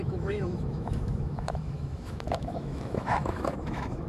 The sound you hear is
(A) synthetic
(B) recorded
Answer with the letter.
A